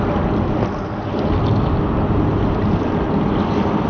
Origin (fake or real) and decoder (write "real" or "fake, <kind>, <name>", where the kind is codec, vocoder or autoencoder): real